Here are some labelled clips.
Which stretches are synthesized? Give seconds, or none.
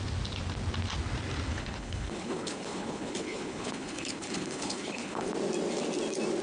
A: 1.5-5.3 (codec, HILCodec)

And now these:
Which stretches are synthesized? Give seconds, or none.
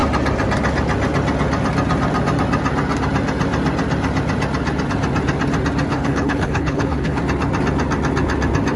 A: 5.9-7.2 (codec, HILCodec)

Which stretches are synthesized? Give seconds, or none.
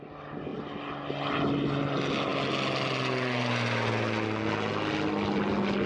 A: none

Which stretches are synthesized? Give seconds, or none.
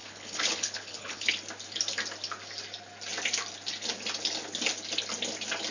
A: 0.0-1.3 (codec, HILCodec)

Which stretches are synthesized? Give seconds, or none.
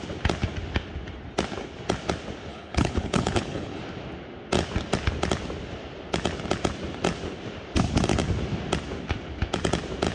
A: 2.5-3.8 (codec, HILCodec)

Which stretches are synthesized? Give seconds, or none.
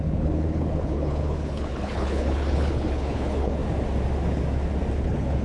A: 0.0-3.6 (codec, HILCodec); 5.0-5.4